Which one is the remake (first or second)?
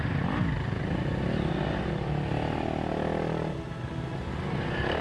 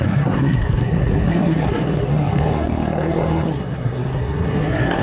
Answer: second